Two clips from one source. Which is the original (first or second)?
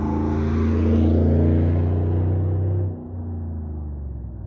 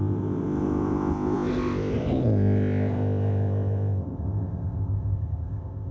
first